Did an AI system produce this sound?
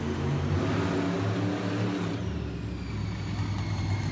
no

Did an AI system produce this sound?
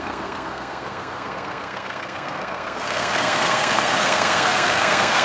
yes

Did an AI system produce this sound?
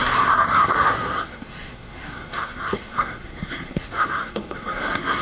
yes